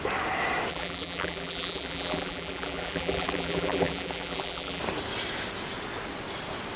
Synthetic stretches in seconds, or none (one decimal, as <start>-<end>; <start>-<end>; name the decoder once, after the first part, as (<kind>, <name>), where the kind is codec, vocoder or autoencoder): 0.7-4.8 (vocoder, BigVGAN v2)